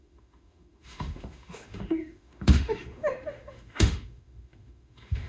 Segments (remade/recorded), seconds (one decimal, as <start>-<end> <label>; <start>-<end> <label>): 0.0-5.3 remade